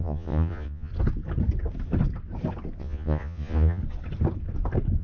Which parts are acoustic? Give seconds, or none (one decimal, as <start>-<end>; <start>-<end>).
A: 0.9-2.8; 3.8-5.0